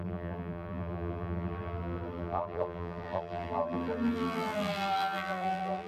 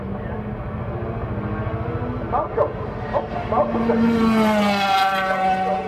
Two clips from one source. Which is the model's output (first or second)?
first